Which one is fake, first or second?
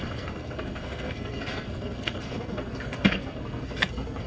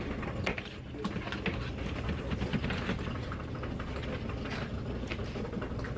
first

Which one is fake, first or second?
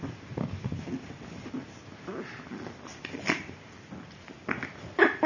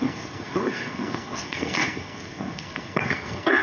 second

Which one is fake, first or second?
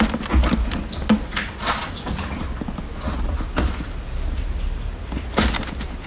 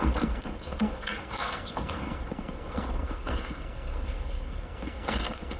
second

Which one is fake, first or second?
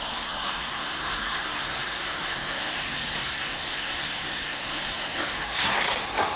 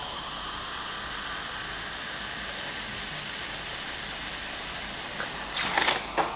first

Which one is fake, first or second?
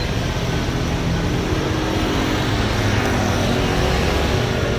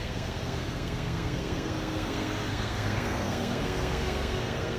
second